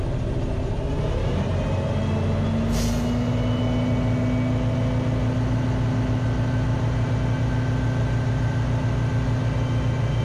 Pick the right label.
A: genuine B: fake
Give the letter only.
A